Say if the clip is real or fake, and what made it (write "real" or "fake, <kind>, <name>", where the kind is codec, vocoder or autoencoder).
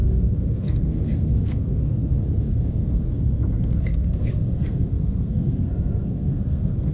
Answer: fake, codec, SNAC